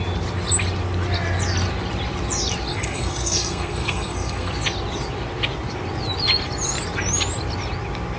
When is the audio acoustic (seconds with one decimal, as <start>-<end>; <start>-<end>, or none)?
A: 0.0-2.7; 4.5-8.2